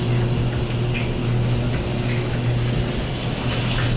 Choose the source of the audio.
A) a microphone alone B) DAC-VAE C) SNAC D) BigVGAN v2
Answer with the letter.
A